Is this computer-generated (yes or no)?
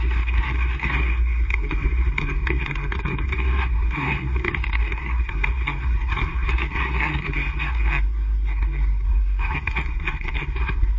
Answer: yes